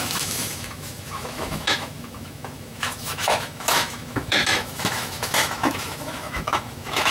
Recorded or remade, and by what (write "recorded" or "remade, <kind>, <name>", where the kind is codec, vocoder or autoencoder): remade, autoencoder, DAC-VAE